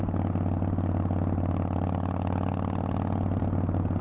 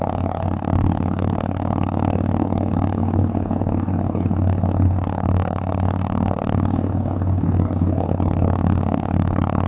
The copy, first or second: second